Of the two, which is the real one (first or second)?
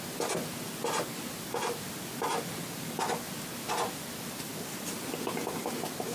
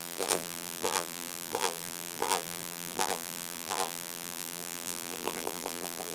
first